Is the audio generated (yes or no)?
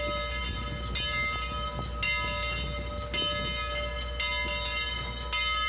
no